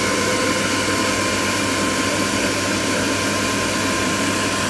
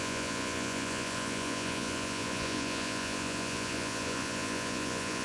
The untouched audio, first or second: first